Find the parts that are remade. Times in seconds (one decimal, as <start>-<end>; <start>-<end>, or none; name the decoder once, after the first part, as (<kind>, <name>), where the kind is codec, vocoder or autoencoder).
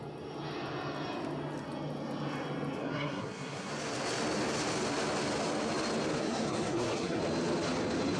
2.8-3.7 (codec, SNAC); 6.2-7.2